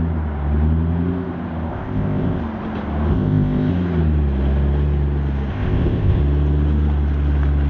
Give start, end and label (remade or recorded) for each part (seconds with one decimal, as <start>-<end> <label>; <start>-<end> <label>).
0.0-1.7 recorded; 1.7-2.4 remade; 2.4-3.1 recorded; 3.1-3.7 remade; 3.7-5.5 recorded; 5.5-6.2 remade; 6.2-7.7 recorded